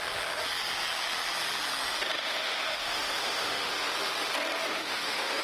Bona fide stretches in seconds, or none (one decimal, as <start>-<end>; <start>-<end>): 0.0-2.1; 3.7-4.6